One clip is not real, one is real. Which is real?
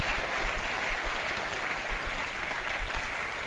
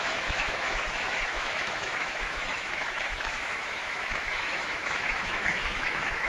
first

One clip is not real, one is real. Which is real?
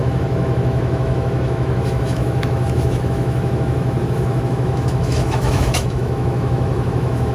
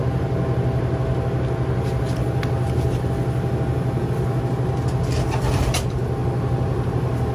second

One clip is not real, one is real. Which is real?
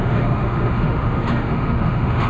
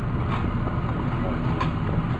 second